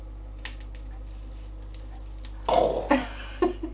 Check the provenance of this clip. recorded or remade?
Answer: recorded